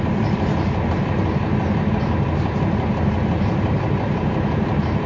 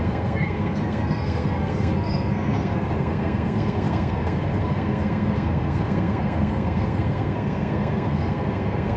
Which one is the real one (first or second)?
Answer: first